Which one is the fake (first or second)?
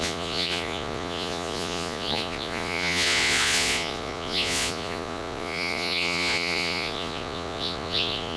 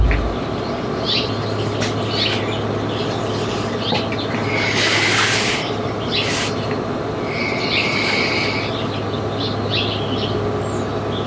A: first